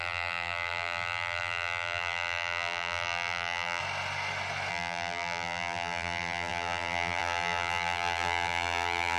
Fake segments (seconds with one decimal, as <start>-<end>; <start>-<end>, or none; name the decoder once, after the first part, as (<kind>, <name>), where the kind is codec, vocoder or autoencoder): 0.0-3.8 (vocoder, BigVGAN v2); 4.7-9.2